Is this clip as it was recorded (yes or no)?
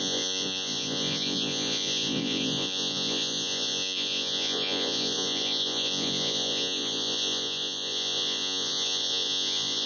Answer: no